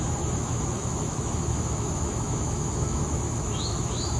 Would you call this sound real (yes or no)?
no